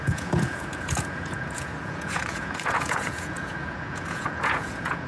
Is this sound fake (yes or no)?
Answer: yes